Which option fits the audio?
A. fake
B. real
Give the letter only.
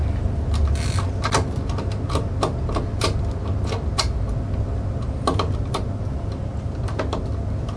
B